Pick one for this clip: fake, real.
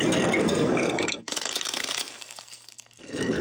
fake